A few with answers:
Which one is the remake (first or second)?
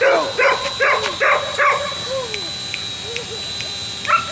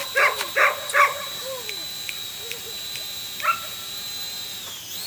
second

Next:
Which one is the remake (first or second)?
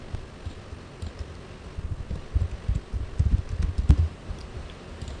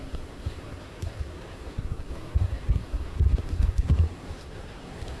second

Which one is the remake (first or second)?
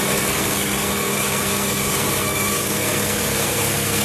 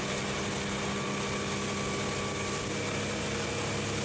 first